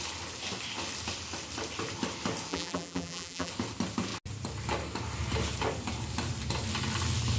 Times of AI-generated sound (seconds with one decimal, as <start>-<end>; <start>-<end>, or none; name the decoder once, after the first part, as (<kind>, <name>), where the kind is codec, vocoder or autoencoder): 2.5-3.5 (vocoder, BigVGAN v2)